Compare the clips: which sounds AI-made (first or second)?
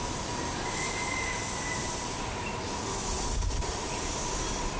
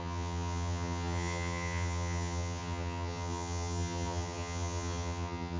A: second